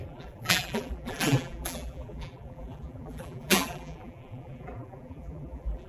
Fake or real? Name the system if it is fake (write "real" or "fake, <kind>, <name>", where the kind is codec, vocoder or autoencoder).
fake, vocoder, BigVGAN v2